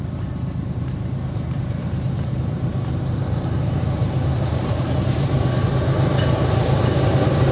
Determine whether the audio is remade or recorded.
remade